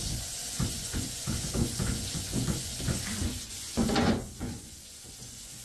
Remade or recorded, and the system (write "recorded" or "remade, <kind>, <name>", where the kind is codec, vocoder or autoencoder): remade, vocoder, Vocos